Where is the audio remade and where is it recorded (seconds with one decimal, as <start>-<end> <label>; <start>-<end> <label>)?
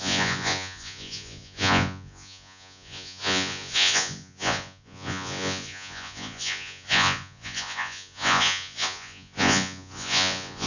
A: 0.0-10.7 remade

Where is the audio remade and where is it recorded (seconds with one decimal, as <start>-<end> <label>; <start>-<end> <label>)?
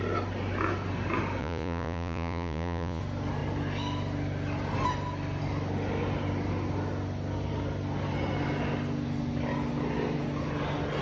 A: 0.0-1.4 recorded; 1.4-3.0 remade; 3.0-11.0 recorded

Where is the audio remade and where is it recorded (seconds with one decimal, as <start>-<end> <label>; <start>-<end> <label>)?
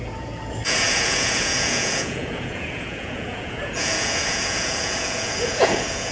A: 0.0-6.1 remade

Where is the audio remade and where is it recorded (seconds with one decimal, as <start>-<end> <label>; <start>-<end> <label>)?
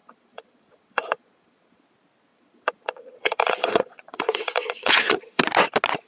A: 0.0-1.8 remade; 1.8-2.3 recorded; 2.3-5.4 remade; 5.4-6.1 recorded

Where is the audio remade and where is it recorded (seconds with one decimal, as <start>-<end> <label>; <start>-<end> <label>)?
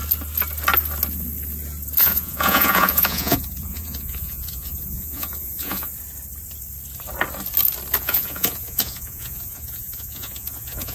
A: 0.0-2.0 recorded; 2.0-5.9 remade; 5.9-8.0 recorded; 8.0-10.9 remade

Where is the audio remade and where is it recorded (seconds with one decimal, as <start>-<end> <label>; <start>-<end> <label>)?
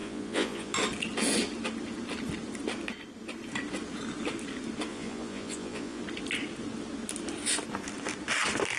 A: 0.0-0.7 remade; 0.7-4.9 recorded; 4.9-6.0 remade; 6.0-8.8 recorded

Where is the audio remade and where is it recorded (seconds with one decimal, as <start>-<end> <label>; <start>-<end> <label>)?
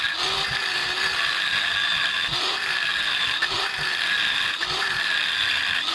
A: 0.0-5.9 recorded